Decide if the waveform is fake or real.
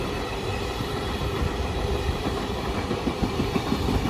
fake